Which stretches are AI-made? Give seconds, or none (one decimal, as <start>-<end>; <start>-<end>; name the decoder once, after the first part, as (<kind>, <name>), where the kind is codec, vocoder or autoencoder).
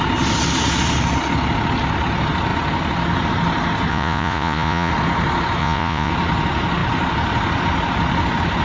3.9-4.9 (vocoder, Vocos); 5.6-6.1